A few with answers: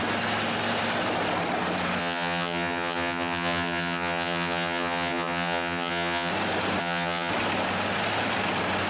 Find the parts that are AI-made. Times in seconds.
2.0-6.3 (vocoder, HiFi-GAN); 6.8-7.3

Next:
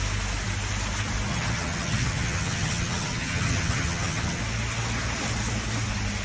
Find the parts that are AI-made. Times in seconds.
1.3-4.4 (vocoder, HiFi-GAN)

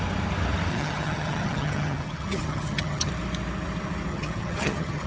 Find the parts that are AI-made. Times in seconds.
0.7-3.1 (vocoder, HiFi-GAN); 4.1-5.1

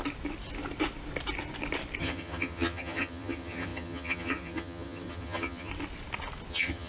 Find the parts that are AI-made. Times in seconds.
2.0-5.7 (vocoder, HiFi-GAN); 6.5-6.9

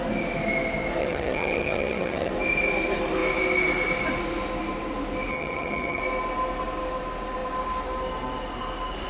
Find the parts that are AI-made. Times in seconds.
1.0-2.3 (vocoder, HiFi-GAN); 5.3-6.0

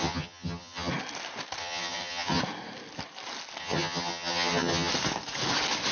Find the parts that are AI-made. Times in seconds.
0.0-0.9 (vocoder, HiFi-GAN); 1.6-2.4; 3.6-4.9

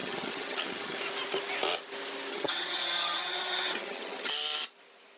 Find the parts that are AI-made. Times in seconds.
0.0-1.0 (vocoder, HiFi-GAN); 2.3-4.3

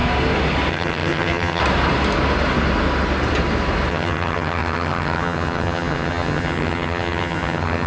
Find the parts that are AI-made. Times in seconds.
0.7-1.6 (vocoder, HiFi-GAN); 3.9-7.9